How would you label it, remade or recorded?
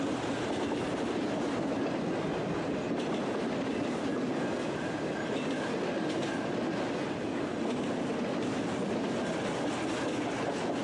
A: recorded